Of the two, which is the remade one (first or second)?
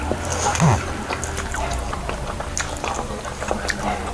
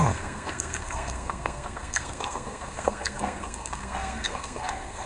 second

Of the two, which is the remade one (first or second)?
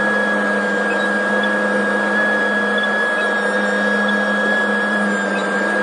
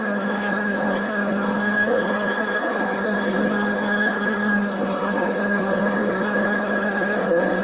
second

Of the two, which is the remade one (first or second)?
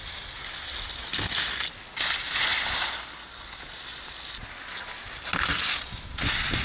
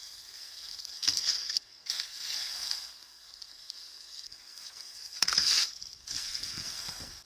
second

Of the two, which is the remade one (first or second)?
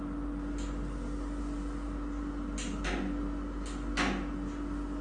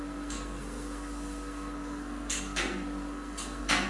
second